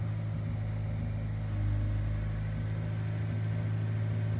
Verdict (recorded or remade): recorded